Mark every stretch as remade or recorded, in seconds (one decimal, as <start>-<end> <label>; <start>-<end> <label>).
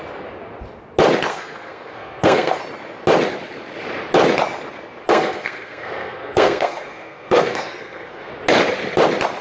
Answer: 0.0-1.3 recorded; 1.3-2.6 remade; 2.6-5.0 recorded; 5.0-8.3 remade; 8.3-9.4 recorded